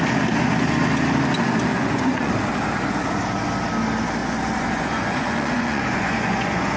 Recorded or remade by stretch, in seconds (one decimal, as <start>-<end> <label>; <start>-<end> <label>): 0.0-1.7 recorded; 1.7-2.3 remade; 2.3-4.2 recorded; 4.2-6.8 remade